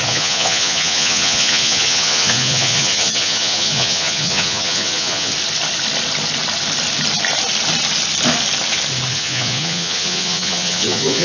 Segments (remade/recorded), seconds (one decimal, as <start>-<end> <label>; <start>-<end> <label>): 0.0-5.3 remade; 5.3-9.1 recorded; 9.1-11.2 remade